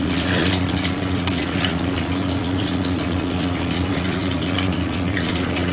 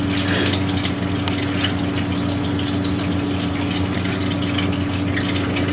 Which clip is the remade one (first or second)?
first